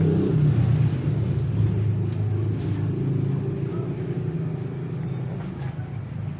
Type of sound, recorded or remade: recorded